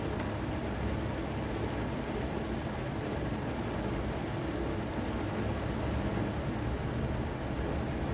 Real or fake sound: real